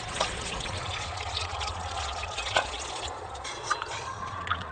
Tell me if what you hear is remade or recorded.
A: remade